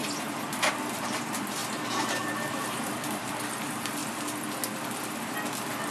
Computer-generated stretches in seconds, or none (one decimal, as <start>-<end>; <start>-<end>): 0.0-1.6; 2.2-4.0

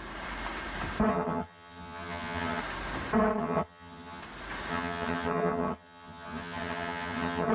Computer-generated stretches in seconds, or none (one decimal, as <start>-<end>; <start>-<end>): 1.1-2.6; 3.4-4.2; 4.7-7.5

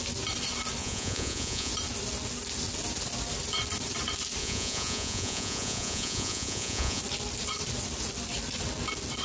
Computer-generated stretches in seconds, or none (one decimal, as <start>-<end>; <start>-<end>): 0.8-1.7; 4.4-7.0

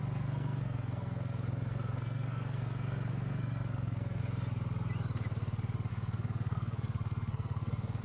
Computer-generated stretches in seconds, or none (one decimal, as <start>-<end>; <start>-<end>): 0.0-4.2; 5.9-8.0